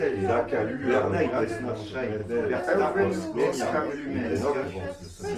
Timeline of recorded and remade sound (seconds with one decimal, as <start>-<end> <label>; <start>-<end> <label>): 0.0-5.4 recorded